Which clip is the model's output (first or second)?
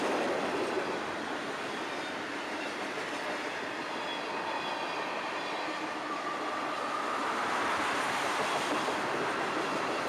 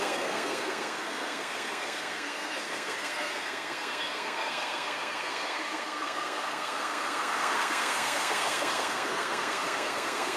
second